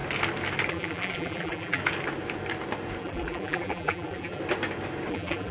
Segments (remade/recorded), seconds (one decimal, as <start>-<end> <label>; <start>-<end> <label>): 0.0-0.7 recorded; 0.7-1.8 remade; 1.8-3.0 recorded; 3.0-4.4 remade; 4.4-5.1 recorded; 5.1-5.5 remade